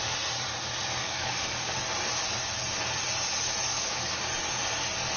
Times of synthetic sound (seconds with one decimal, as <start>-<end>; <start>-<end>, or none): 1.0-1.8; 3.7-4.2